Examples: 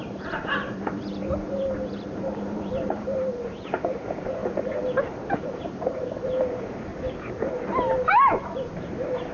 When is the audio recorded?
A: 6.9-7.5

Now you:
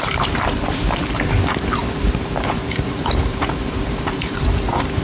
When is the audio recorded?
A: 0.0-1.8

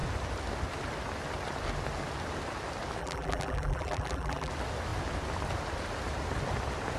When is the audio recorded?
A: 0.0-3.0; 4.5-7.0

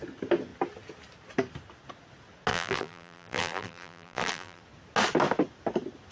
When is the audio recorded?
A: 0.0-2.5; 4.6-6.1

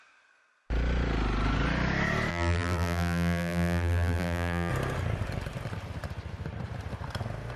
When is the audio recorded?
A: 0.0-2.3; 4.7-7.6